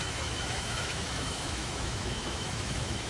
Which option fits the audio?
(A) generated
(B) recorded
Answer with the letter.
A